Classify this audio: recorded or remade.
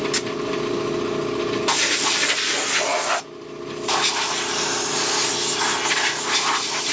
recorded